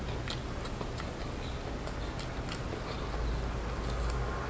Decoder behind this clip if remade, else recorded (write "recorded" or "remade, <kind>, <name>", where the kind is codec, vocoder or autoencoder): recorded